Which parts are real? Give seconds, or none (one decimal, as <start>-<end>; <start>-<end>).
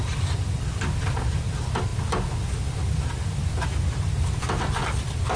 0.0-5.4